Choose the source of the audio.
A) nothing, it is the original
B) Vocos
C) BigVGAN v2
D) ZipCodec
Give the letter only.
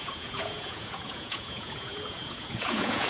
B